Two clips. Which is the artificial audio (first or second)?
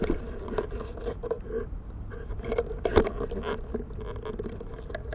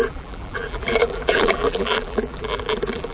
second